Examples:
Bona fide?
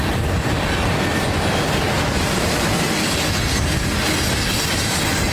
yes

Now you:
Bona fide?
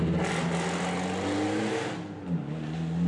yes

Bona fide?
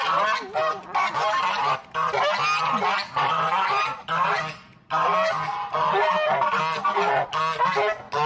yes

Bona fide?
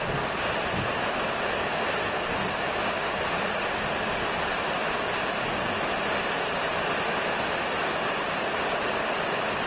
yes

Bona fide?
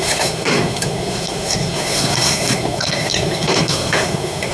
no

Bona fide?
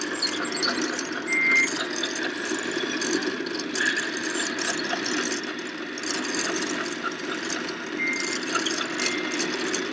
yes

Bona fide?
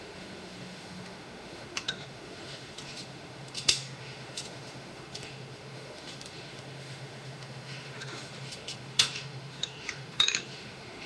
no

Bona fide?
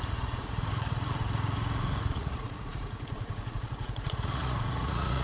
no